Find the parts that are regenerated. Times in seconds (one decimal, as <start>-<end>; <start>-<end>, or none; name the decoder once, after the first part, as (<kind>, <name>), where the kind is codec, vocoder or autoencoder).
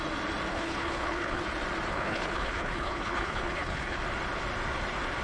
0.5-1.4 (codec, HILCodec); 1.9-4.0